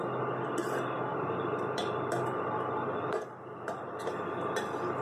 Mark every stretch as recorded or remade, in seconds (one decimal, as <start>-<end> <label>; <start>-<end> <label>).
0.0-1.1 recorded; 1.1-4.1 remade; 4.1-5.0 recorded